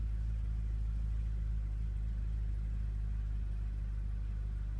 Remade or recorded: recorded